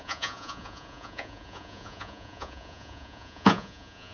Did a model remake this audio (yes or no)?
yes